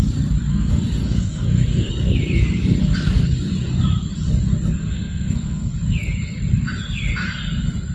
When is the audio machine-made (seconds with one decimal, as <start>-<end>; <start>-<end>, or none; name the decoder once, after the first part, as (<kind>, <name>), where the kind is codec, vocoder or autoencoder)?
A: 0.5-1.9 (codec, SNAC); 4.8-5.7